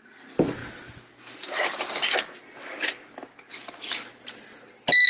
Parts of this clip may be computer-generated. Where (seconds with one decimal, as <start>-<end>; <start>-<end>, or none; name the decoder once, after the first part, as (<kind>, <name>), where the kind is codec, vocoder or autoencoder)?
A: none